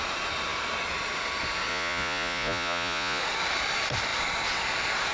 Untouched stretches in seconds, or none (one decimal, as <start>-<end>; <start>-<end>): 0.0-1.7; 3.2-5.1